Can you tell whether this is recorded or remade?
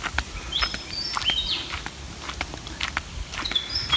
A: recorded